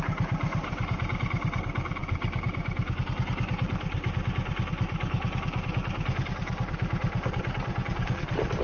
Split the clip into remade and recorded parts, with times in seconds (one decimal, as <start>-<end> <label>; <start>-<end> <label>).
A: 0.0-8.6 recorded